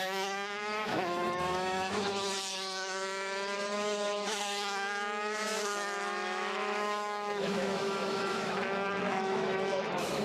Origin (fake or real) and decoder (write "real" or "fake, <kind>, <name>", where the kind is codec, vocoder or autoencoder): fake, autoencoder, DAC-VAE